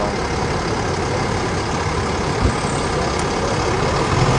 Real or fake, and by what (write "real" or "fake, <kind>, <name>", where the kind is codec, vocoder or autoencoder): real